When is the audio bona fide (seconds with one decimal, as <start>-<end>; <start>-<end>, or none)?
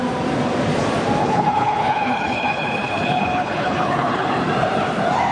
0.0-1.2; 4.4-5.3